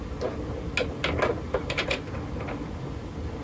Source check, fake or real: real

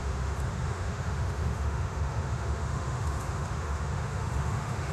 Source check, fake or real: fake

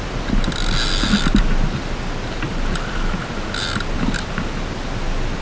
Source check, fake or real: real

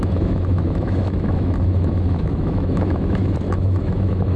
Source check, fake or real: fake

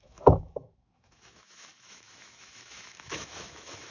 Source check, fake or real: fake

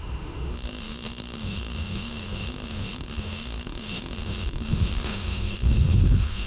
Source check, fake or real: fake